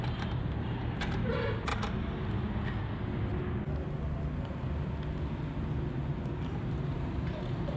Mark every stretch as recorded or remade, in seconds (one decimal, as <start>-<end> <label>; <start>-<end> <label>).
0.0-1.7 remade; 1.7-6.4 recorded; 6.4-7.8 remade